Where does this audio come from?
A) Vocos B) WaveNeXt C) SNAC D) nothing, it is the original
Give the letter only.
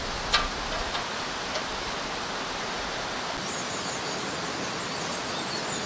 D